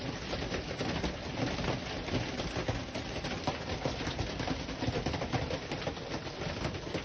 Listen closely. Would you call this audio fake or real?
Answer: real